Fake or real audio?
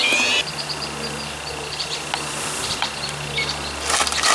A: real